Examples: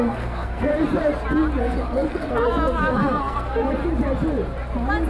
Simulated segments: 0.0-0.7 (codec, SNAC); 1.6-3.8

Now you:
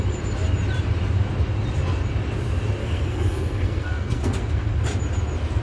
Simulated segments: 2.8-4.7 (codec, SNAC)

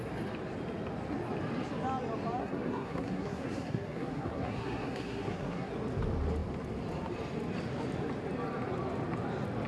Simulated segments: 2.4-5.7 (codec, SNAC)